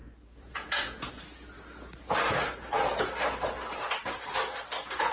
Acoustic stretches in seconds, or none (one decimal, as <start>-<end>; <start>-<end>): 1.1-5.1